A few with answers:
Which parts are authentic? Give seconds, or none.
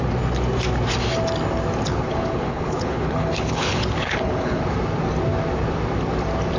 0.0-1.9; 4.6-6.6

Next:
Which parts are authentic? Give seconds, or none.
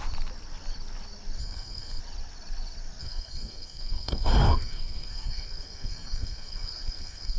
0.0-1.4; 2.0-3.0